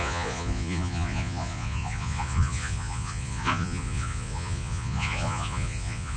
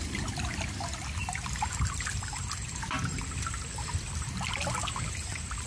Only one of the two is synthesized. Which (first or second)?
first